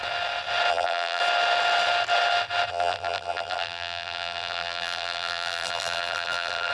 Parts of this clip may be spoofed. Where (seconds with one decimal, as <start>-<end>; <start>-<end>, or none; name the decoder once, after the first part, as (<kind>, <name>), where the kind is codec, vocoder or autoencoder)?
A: 0.7-1.2 (vocoder, BigVGAN v2); 2.7-6.7